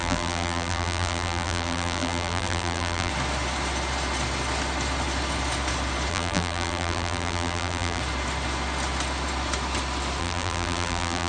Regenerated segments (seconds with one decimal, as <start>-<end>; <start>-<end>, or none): 0.0-3.1; 6.1-8.0; 10.2-11.3